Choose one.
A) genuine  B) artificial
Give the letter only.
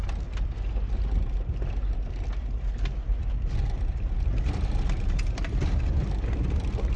A